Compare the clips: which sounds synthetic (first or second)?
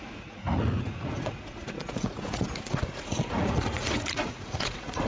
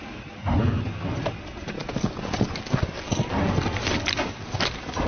first